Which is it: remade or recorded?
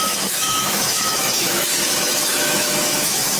remade